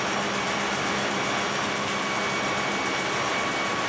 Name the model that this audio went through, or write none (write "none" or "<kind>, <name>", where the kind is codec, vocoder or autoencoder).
none